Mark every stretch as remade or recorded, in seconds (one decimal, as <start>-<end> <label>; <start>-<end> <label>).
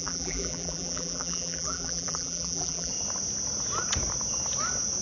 0.0-2.9 remade; 2.9-5.0 recorded